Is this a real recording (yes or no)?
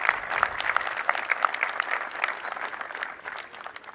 yes